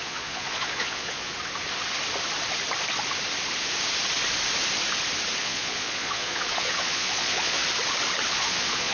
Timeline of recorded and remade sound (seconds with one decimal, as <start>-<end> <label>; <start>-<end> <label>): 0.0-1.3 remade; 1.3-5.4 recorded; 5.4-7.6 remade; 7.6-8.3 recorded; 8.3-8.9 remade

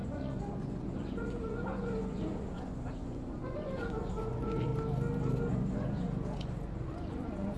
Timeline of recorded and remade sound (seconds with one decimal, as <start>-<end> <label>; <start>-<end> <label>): 0.0-4.7 remade; 4.7-5.5 recorded; 5.5-7.6 remade

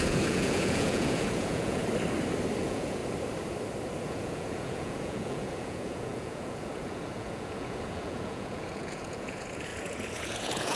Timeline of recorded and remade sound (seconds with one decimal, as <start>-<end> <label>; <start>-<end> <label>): 0.0-1.8 remade; 1.8-2.6 recorded; 2.6-3.0 remade; 3.0-4.0 recorded; 4.0-10.8 remade

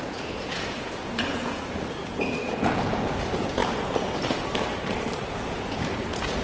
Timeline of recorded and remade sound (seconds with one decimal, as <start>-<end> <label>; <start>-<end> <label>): 0.0-3.6 remade; 3.6-5.3 recorded; 5.3-6.4 remade